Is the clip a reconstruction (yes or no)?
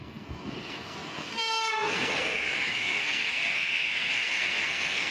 yes